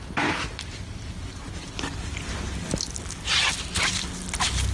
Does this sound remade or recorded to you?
recorded